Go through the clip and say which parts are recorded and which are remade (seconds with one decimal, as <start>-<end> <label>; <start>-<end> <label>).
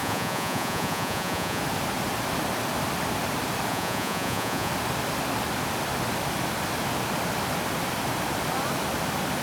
0.0-1.6 remade; 1.6-3.7 recorded; 3.7-4.7 remade; 4.7-9.4 recorded